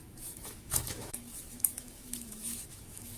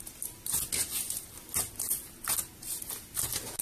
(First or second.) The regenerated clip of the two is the first